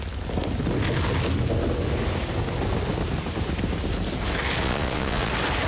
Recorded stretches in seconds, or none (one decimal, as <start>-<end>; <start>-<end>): 0.0-4.6; 5.3-5.7